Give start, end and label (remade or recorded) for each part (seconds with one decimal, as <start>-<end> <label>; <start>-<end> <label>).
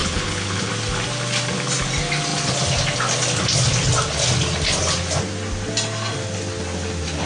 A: 0.0-0.7 remade; 0.7-7.3 recorded